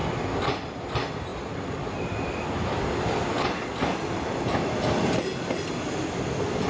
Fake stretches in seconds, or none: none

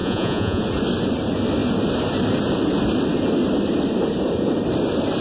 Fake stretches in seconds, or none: 0.0-0.6 (vocoder, Vocos)

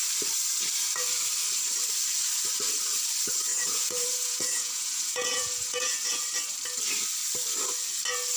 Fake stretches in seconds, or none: 3.5-6.2 (vocoder, Vocos)

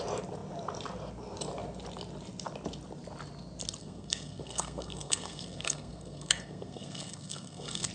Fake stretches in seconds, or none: 3.8-7.9 (codec, SNAC)

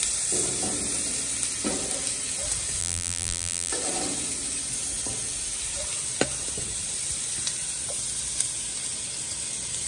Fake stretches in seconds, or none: 2.8-3.7 (vocoder, BigVGAN v2)

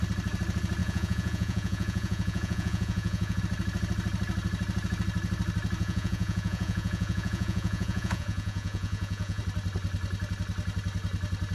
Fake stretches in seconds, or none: 0.8-3.4 (vocoder, Vocos); 5.8-9.4

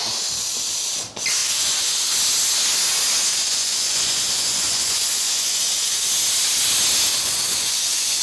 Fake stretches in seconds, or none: 1.4-2.1 (vocoder, Vocos); 3.3-6.1; 7.1-8.2

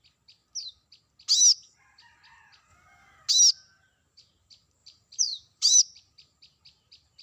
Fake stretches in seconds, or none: 4.8-5.8 (vocoder, BigVGAN v2)